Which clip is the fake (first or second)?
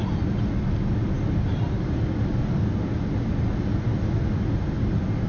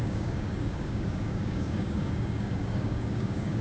second